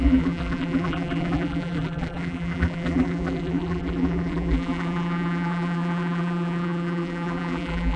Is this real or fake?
fake